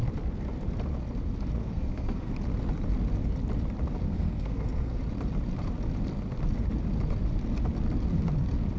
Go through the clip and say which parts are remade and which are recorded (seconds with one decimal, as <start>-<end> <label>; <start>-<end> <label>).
0.0-1.6 recorded; 1.6-2.3 remade; 2.3-4.1 recorded; 4.1-5.0 remade; 5.0-8.8 recorded